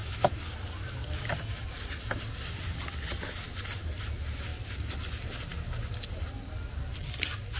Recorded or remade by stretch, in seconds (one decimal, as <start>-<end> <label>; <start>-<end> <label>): 0.0-7.6 recorded